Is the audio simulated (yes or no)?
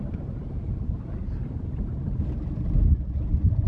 no